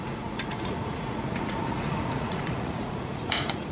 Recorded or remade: remade